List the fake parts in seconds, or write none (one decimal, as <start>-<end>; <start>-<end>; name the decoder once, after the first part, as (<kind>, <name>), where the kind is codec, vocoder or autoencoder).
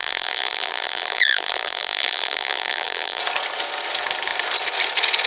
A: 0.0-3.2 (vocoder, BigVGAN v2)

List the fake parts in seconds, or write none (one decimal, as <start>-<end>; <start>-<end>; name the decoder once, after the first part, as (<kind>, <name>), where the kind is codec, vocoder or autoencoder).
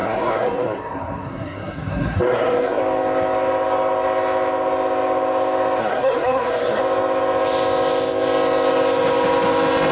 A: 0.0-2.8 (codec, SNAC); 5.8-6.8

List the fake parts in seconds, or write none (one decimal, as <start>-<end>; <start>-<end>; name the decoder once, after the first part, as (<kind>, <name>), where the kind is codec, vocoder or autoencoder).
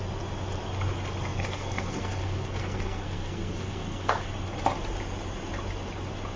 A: 1.3-4.3 (codec, SNAC)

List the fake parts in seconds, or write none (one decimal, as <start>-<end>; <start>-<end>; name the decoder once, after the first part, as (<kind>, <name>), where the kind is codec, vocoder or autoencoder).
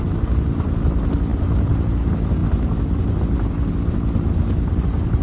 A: none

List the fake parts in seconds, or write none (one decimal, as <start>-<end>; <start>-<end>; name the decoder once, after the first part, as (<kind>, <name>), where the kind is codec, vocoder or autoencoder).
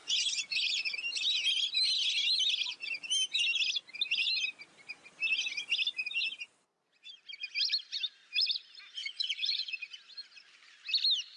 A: 9.0-9.7 (vocoder, Vocos)